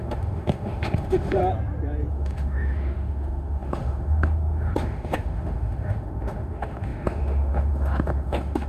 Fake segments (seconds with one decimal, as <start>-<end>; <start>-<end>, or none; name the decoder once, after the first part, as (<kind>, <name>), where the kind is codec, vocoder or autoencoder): 0.0-1.4 (autoencoder, DAC-VAE); 2.1-8.7